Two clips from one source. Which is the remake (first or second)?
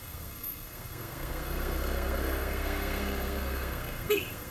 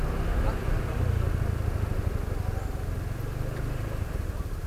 first